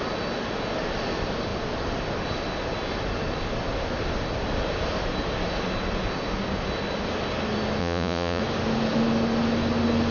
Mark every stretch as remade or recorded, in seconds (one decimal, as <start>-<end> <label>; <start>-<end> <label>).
0.0-7.8 recorded; 7.8-8.4 remade; 8.4-10.1 recorded